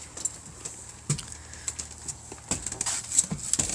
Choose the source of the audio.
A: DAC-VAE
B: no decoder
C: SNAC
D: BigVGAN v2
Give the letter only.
B